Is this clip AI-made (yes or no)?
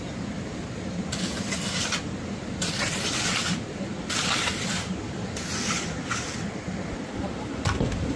no